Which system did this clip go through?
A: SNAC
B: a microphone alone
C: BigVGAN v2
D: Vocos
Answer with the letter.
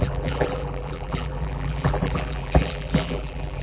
C